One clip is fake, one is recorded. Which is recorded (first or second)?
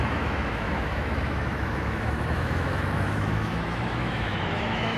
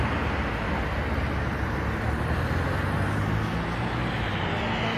second